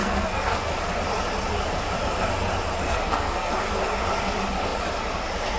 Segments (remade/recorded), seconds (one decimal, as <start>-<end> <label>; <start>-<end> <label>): 0.0-0.7 remade; 0.7-2.7 recorded; 2.7-3.5 remade; 3.5-5.6 recorded